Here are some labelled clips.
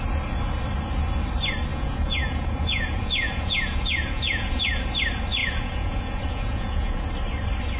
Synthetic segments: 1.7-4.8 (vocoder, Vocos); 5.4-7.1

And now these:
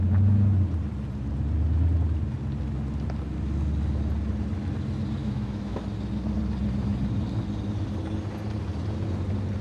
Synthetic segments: 5.2-5.8 (autoencoder, DAC-VAE)

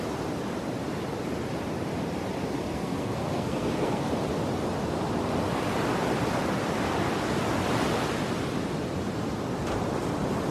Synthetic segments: 2.6-4.1 (codec, SNAC)

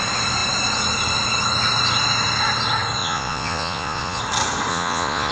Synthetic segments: 3.0-4.2 (vocoder, Vocos); 4.7-5.3